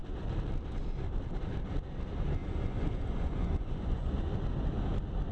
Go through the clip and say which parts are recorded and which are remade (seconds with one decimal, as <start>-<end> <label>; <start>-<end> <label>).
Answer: 0.0-2.4 recorded; 2.4-4.3 remade; 4.3-5.3 recorded